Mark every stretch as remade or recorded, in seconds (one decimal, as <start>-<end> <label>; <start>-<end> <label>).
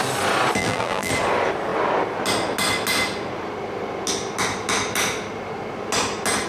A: 0.0-0.6 recorded; 0.6-1.1 remade; 1.1-6.5 recorded